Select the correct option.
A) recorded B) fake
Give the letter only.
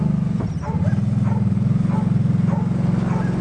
A